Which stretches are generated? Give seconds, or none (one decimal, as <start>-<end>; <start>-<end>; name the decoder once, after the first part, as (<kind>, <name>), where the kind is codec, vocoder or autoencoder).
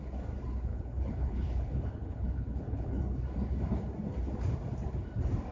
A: 0.7-3.0 (codec, HILCodec)